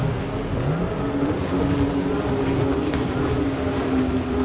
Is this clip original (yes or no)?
yes